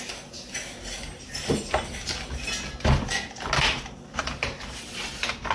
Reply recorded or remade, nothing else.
recorded